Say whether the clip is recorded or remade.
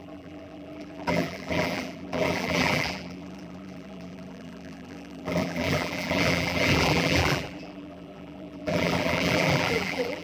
remade